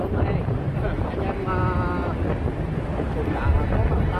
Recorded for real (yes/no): yes